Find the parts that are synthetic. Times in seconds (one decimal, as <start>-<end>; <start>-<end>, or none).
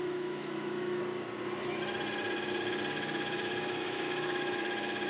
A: 0.0-1.0; 2.9-5.1